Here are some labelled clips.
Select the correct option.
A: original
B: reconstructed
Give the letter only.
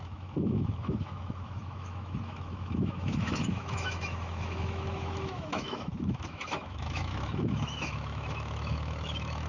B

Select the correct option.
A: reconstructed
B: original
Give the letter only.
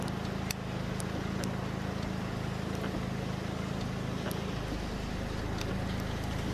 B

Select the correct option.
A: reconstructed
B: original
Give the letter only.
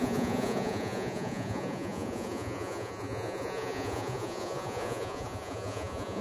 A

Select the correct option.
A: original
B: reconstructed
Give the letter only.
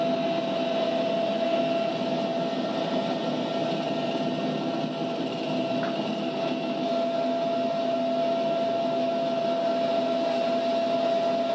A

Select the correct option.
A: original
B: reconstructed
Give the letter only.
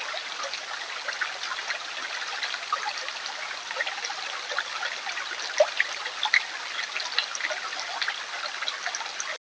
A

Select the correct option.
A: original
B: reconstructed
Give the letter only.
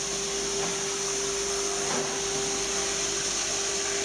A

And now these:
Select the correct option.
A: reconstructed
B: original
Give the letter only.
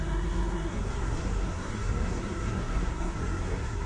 A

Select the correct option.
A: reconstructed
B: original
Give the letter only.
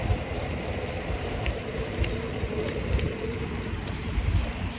A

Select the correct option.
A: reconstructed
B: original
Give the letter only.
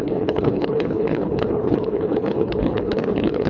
A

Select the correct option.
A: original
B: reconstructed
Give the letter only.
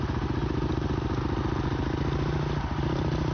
A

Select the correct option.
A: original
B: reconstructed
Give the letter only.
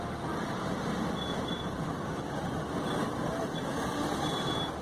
A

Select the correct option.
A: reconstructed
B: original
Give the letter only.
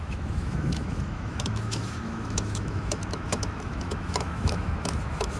A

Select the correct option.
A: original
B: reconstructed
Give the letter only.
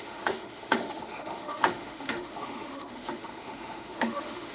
B